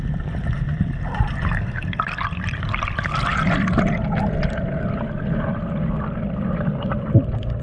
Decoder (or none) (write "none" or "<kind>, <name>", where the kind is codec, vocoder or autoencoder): none